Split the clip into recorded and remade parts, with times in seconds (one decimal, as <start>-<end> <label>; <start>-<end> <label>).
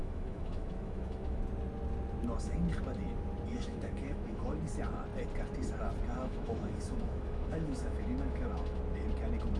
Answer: 0.0-1.4 remade; 1.4-3.5 recorded; 3.5-4.6 remade; 4.6-6.2 recorded; 6.2-8.8 remade; 8.8-9.6 recorded